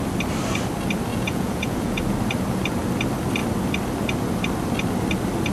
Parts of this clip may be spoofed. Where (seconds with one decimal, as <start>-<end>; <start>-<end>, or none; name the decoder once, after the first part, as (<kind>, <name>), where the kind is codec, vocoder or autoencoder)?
1.1-2.0 (vocoder, Vocos)